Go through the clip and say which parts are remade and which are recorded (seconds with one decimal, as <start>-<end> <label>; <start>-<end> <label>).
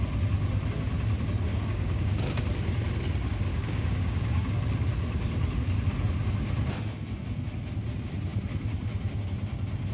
0.0-1.5 recorded; 1.5-2.4 remade; 2.4-3.5 recorded; 3.5-4.6 remade; 4.6-9.9 recorded